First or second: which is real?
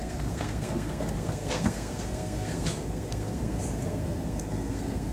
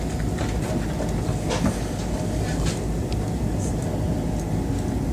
second